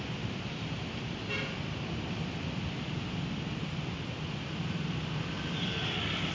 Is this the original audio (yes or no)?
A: yes